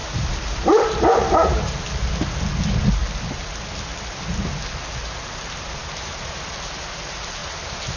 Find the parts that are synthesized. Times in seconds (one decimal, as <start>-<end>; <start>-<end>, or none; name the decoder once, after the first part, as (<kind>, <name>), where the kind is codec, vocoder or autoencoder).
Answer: 0.0-1.8 (vocoder, BigVGAN v2); 5.0-6.4; 7.4-8.0